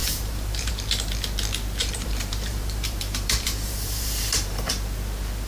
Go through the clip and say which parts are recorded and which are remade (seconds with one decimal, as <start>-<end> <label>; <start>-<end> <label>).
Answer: 0.0-0.7 remade; 0.7-1.8 recorded; 1.8-4.7 remade; 4.7-5.5 recorded